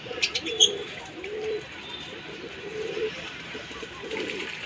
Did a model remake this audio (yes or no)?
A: yes